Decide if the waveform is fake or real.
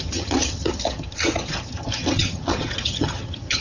fake